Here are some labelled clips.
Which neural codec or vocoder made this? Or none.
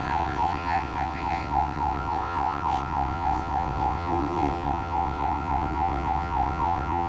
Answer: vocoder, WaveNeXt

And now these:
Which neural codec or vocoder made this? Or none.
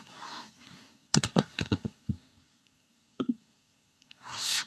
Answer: codec, SNAC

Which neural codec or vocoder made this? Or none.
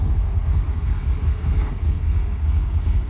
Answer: codec, SNAC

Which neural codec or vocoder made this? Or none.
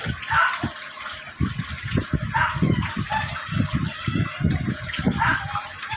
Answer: none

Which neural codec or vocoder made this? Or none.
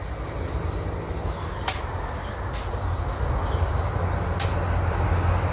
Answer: none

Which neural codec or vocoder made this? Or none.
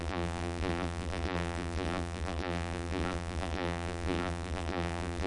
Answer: vocoder, BigVGAN v2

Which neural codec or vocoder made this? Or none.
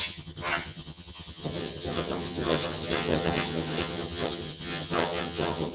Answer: vocoder, HiFi-GAN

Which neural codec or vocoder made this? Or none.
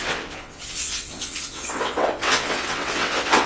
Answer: vocoder, WaveNeXt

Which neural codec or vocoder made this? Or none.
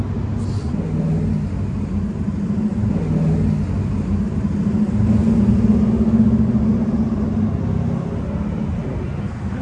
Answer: none